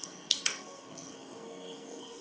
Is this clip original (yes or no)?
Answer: no